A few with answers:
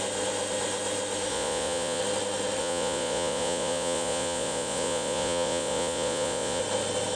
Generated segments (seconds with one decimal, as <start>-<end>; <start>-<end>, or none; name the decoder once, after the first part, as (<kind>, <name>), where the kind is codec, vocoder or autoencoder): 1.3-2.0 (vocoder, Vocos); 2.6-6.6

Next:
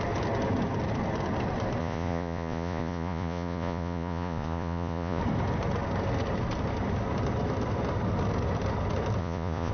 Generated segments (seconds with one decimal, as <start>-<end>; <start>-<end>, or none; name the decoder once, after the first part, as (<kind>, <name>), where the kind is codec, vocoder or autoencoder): 1.8-5.2 (vocoder, Vocos); 9.2-9.7

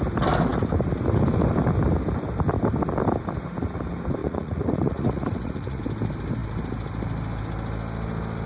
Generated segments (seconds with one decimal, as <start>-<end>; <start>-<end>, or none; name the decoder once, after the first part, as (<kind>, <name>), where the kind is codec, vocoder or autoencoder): 4.2-5.8 (vocoder, Vocos)